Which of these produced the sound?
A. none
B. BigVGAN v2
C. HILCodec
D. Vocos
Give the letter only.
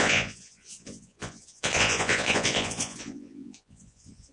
D